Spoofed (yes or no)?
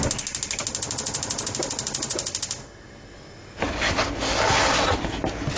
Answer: no